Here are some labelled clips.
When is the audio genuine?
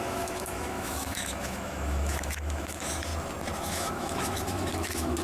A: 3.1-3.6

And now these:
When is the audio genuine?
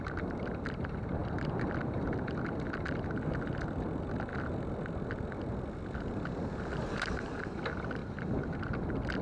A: 0.0-9.2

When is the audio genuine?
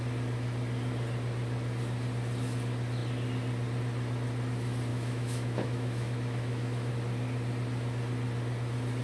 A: 0.0-4.9; 6.9-9.0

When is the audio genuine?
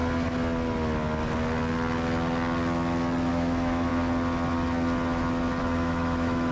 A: 0.0-3.3; 3.9-5.6